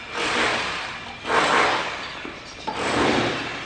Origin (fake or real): real